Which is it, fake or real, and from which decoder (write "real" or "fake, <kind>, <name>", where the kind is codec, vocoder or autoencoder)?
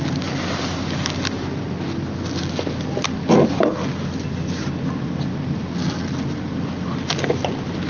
real